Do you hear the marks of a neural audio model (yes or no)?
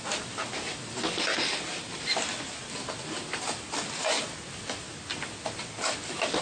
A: no